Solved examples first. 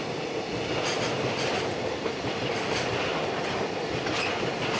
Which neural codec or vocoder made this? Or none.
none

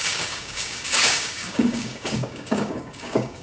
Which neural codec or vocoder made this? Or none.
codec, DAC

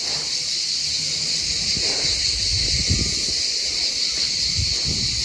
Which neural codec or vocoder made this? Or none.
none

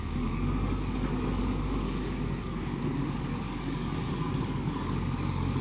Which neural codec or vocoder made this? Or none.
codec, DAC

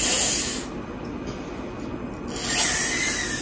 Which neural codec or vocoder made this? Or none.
none